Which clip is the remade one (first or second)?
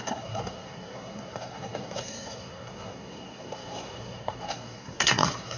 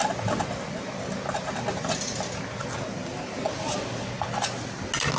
first